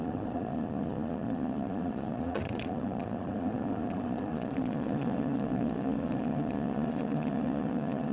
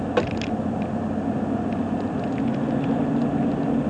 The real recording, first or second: second